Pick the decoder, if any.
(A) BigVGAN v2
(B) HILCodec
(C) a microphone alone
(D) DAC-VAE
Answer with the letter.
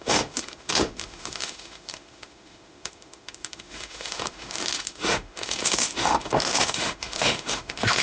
D